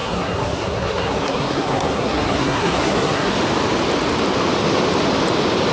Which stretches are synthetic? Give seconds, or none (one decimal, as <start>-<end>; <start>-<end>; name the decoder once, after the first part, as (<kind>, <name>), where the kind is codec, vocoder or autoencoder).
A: 0.0-3.3 (codec, SNAC)